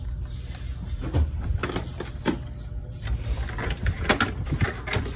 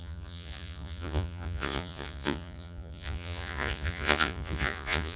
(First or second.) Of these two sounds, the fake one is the second